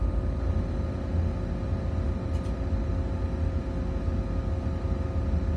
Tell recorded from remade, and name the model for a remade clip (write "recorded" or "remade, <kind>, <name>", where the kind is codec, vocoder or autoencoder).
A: recorded